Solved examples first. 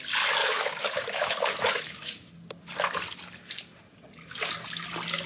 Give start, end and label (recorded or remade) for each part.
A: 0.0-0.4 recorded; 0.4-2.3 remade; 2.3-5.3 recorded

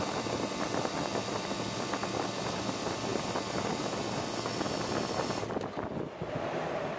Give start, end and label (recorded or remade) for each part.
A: 0.0-7.0 recorded

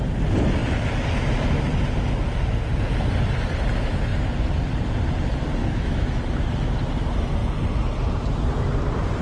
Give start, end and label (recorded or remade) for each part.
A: 0.0-5.6 recorded; 5.6-6.2 remade; 6.2-9.2 recorded